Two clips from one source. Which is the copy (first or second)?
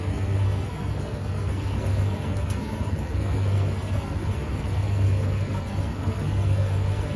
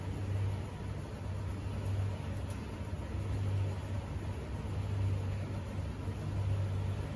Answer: first